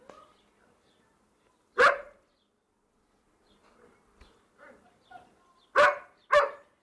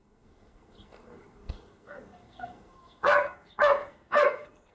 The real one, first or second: first